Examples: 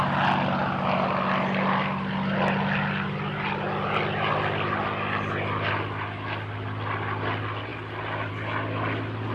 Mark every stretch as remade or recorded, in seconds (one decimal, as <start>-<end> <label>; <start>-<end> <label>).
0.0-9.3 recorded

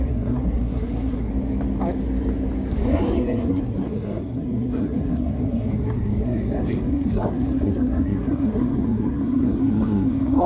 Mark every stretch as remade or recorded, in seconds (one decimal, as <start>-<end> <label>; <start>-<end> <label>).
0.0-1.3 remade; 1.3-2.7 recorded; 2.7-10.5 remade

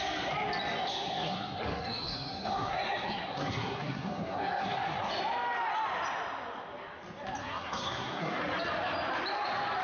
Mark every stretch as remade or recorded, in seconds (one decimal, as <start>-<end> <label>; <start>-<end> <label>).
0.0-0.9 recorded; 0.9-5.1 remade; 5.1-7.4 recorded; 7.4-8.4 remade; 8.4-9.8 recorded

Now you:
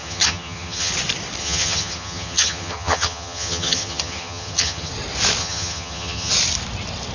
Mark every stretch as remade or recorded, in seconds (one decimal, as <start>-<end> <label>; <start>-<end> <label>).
0.0-0.9 remade; 0.9-1.4 recorded; 1.4-4.9 remade; 4.9-5.4 recorded; 5.4-6.3 remade; 6.3-7.1 recorded

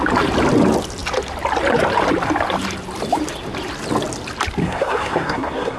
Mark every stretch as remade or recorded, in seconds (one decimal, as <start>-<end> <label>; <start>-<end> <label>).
0.0-4.6 recorded; 4.6-5.8 remade